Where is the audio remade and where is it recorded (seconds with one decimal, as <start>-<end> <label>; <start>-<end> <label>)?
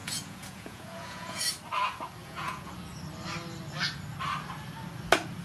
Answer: 0.0-1.4 remade; 1.4-2.2 recorded; 2.2-2.7 remade; 2.7-5.4 recorded